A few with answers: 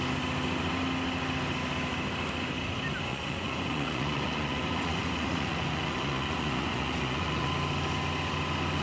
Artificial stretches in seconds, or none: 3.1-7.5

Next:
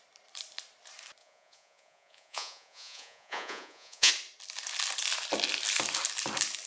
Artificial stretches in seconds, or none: 1.2-4.1

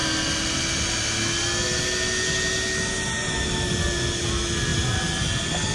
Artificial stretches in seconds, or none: none

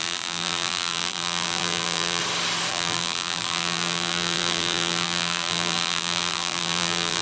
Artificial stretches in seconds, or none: 0.0-2.2; 2.7-7.2

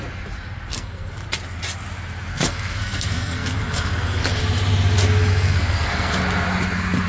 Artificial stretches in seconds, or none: 0.7-1.2; 2.3-4.2; 5.3-6.1